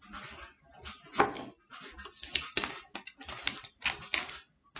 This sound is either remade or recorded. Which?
recorded